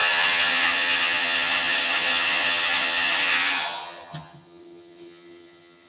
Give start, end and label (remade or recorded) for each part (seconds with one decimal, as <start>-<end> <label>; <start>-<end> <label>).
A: 0.0-5.9 remade